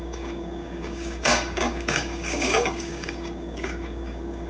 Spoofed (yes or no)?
yes